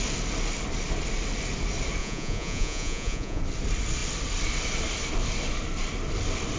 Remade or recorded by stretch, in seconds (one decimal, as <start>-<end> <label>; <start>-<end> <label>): 0.0-2.0 recorded; 2.0-3.4 remade; 3.4-6.6 recorded